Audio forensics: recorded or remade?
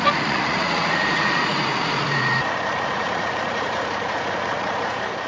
remade